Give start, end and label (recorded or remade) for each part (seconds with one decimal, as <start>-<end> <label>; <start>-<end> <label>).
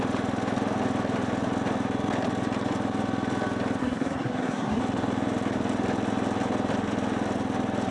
0.0-3.8 recorded; 3.8-4.8 remade; 4.8-7.9 recorded